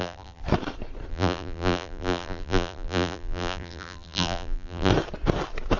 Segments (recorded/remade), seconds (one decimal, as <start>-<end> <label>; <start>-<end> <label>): 0.0-0.4 remade; 0.4-1.1 recorded; 1.1-4.9 remade; 4.9-5.8 recorded